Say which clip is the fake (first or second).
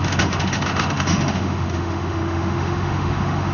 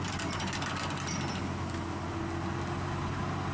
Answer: first